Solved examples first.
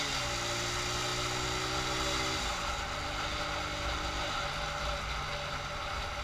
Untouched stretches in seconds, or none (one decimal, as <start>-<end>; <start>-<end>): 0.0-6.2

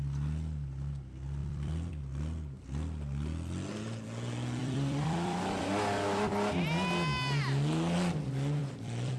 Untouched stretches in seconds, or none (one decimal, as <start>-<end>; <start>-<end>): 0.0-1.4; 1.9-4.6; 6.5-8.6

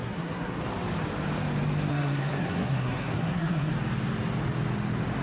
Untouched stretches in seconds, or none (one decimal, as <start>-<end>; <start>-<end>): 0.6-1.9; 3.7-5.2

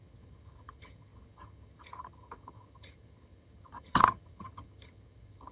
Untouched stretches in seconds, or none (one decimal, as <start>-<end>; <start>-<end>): none

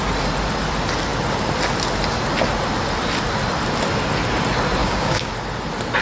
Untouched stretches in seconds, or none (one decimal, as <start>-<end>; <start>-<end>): 0.0-4.8; 5.3-6.0